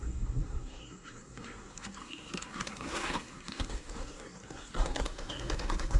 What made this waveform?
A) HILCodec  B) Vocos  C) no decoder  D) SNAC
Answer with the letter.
D